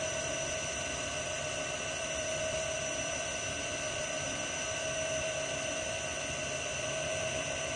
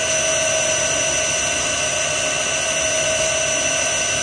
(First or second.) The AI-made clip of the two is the first